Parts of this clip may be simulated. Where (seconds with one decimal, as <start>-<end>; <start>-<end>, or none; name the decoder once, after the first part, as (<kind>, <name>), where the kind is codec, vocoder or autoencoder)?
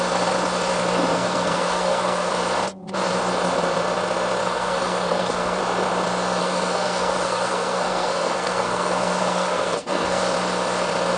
1.1-2.3 (codec, SNAC); 4.4-5.6; 6.4-10.2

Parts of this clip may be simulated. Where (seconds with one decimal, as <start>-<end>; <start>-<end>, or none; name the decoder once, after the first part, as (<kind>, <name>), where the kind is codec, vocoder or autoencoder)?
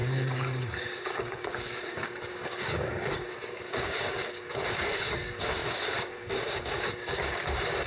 0.0-7.9 (codec, DAC)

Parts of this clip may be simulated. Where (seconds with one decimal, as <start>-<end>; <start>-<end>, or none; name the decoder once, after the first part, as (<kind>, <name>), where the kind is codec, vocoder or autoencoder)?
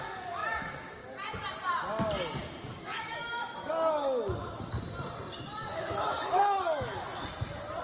0.4-1.0 (autoencoder, DAC-VAE); 2.7-4.7; 5.7-7.2